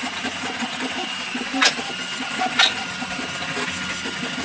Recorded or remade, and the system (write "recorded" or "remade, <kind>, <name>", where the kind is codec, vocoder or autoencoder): recorded